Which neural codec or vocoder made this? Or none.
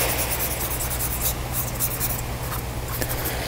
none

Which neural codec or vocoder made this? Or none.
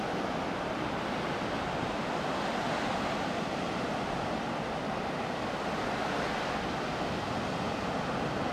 none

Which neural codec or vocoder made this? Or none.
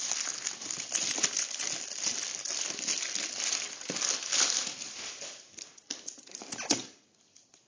none